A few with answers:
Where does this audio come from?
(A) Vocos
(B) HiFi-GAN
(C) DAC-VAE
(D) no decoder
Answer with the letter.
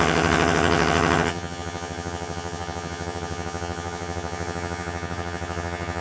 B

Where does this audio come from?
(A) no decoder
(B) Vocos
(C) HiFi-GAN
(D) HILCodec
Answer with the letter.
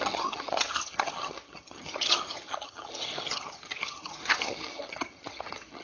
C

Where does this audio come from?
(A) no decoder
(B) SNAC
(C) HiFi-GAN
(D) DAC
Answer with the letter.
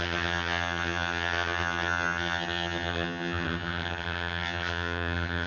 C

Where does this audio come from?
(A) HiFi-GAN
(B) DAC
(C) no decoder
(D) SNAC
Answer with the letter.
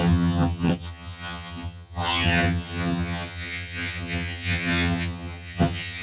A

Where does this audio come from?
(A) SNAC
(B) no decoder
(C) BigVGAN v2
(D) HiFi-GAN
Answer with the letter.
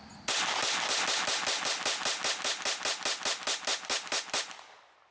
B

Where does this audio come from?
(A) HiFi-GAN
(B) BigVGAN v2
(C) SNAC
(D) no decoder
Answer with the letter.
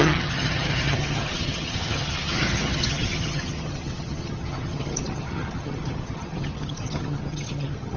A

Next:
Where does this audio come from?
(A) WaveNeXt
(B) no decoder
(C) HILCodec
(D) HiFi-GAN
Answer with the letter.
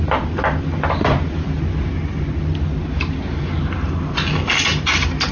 B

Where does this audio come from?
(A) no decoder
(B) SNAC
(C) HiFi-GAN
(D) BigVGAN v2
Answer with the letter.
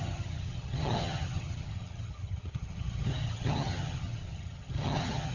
C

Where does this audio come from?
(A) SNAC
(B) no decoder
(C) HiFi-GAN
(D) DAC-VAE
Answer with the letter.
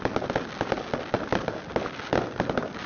B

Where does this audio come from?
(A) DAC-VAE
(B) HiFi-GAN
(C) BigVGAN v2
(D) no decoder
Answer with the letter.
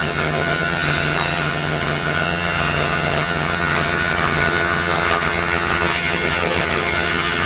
B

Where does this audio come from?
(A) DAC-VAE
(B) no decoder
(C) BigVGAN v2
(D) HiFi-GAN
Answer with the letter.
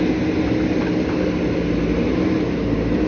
B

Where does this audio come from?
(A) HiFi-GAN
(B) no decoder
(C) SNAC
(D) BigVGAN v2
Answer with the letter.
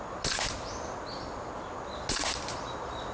B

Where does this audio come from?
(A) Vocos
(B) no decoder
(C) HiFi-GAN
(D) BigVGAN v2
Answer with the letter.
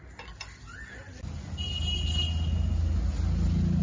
B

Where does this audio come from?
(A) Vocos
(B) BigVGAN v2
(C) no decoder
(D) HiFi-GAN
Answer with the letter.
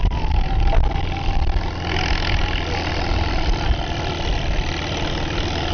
C